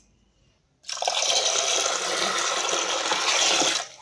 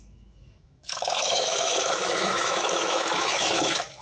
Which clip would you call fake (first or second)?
second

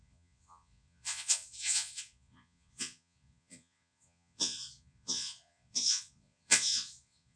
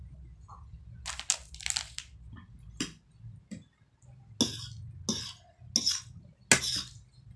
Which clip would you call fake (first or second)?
first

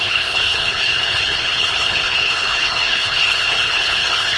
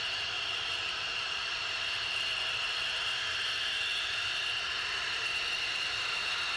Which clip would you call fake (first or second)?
first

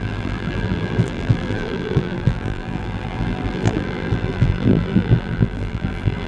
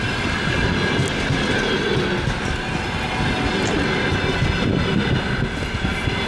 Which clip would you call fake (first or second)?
first